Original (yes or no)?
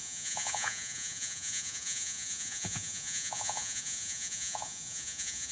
no